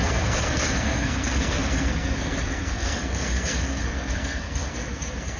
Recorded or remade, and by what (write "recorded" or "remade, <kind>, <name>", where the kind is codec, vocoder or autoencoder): remade, codec, SNAC